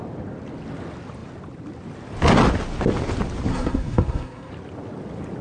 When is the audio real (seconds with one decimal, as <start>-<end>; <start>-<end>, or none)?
0.0-3.5; 4.5-5.4